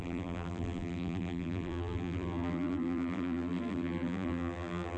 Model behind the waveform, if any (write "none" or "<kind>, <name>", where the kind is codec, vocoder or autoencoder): vocoder, BigVGAN v2